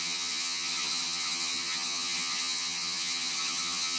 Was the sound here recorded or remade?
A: remade